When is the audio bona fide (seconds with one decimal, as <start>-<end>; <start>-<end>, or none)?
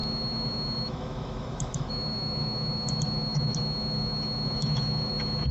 none